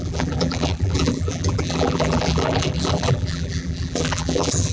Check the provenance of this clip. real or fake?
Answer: fake